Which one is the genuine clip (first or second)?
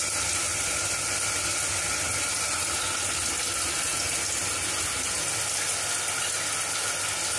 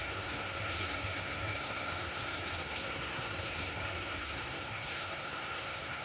first